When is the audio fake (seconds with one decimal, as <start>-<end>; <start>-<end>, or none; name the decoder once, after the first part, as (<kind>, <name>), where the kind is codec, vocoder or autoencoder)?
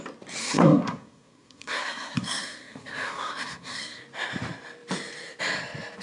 0.4-4.0 (codec, SNAC)